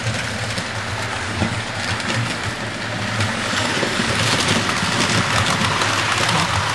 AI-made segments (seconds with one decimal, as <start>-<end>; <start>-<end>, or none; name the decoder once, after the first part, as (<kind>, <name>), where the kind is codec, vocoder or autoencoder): 1.1-1.7 (codec, DAC); 3.3-4.1